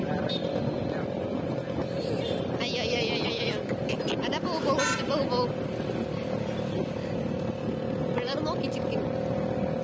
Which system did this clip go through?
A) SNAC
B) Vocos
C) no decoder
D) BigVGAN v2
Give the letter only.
C